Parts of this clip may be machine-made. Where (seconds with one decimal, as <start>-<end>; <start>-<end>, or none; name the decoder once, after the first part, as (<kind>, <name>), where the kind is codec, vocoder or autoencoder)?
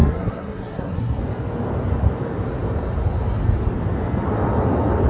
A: 0.0-1.2 (codec, SNAC)